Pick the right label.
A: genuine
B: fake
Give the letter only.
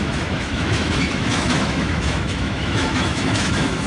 B